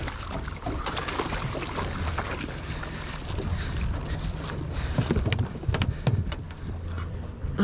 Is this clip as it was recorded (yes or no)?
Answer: yes